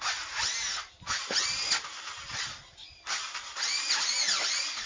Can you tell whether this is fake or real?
real